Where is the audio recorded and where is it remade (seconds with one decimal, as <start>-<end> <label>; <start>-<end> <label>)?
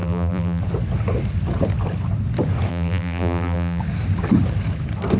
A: 0.0-0.6 remade; 0.6-2.7 recorded; 2.7-3.8 remade; 3.8-5.2 recorded